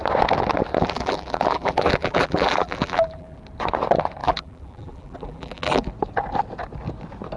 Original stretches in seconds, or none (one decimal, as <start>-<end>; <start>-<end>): 0.0-0.8; 3.4-4.2; 5.9-7.4